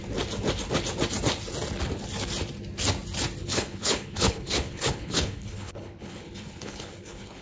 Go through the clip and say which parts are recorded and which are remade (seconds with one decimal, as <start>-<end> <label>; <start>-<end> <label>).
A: 0.0-3.4 recorded; 3.4-7.4 remade